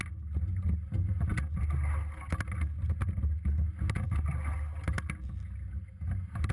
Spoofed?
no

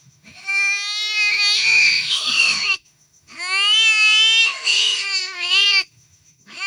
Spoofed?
yes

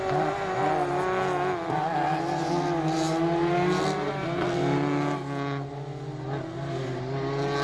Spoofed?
no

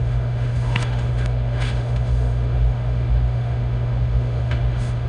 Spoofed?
yes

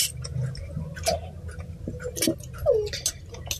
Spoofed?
no